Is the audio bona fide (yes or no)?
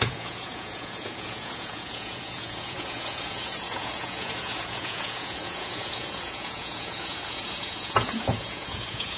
no